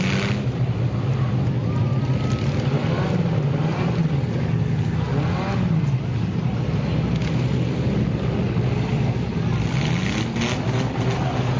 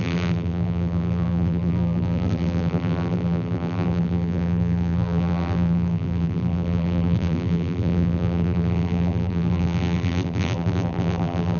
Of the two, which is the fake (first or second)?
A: second